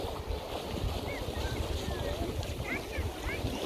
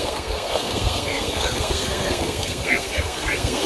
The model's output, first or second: second